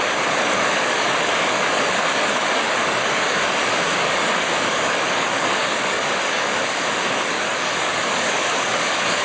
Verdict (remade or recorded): remade